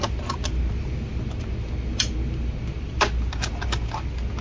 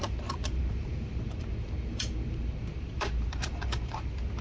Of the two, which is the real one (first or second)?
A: first